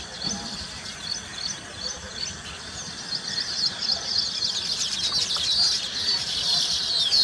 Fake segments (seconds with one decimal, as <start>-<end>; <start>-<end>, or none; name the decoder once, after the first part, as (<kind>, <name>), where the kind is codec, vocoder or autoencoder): none